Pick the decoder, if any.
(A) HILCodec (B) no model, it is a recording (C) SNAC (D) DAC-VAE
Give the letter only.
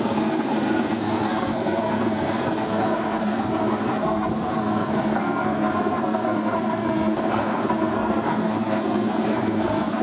C